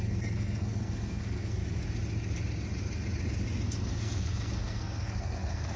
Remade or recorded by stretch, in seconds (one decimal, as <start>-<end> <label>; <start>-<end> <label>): 0.0-1.6 remade; 1.6-4.0 recorded; 4.0-5.8 remade